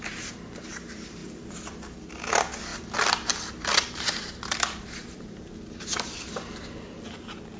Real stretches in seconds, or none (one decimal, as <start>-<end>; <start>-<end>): 0.0-1.2; 2.1-2.7